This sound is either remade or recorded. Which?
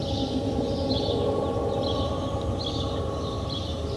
remade